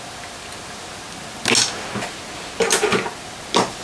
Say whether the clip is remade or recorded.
recorded